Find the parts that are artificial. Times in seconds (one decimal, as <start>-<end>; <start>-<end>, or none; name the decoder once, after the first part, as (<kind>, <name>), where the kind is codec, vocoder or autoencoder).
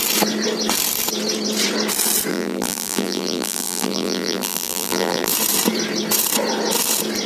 2.3-5.3 (vocoder, BigVGAN v2)